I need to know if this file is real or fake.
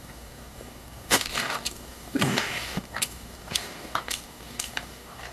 fake